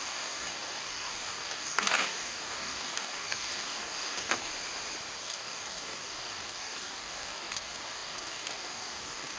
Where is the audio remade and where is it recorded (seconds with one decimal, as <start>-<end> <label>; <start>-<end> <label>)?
0.0-4.5 remade; 4.5-5.2 recorded; 5.2-9.4 remade